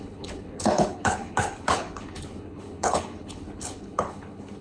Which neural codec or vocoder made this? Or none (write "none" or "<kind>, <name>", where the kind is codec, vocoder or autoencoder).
codec, HILCodec